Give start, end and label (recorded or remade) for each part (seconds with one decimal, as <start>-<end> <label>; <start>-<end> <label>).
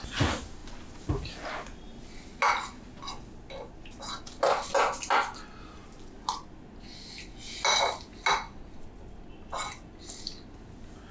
0.0-11.1 recorded